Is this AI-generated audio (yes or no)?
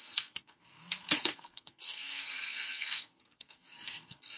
yes